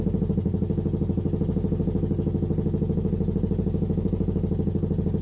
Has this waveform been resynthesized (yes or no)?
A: no